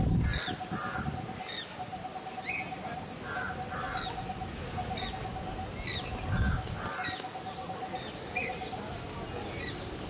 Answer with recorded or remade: recorded